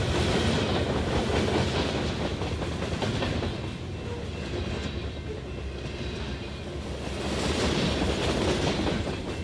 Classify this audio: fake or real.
real